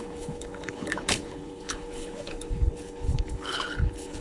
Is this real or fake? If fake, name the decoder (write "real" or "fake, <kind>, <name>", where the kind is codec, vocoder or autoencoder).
fake, codec, HILCodec